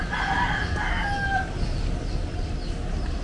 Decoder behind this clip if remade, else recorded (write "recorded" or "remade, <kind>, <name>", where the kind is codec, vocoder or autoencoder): recorded